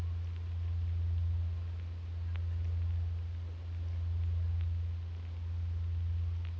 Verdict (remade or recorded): recorded